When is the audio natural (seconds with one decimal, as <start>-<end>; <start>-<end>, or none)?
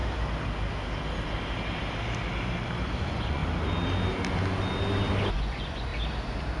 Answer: 0.0-3.0; 3.4-5.3; 5.9-6.6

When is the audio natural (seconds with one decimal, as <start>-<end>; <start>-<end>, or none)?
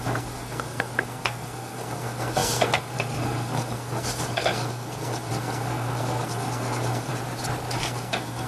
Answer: 7.1-7.8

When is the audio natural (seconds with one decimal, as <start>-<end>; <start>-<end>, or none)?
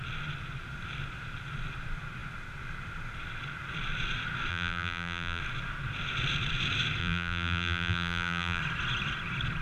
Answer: 0.0-4.5; 5.4-7.0; 8.6-9.6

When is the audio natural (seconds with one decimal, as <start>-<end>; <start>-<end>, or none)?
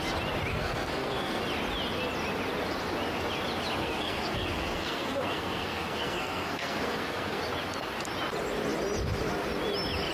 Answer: 0.0-0.5; 1.4-3.8; 7.4-10.1